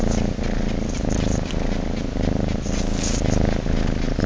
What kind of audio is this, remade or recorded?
recorded